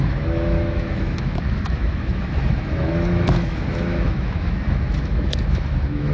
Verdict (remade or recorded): remade